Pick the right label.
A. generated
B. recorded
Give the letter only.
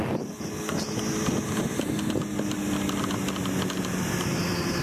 B